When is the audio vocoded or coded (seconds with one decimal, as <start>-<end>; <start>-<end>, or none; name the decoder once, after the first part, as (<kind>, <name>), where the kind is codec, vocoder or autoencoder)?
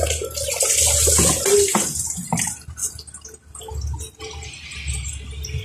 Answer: none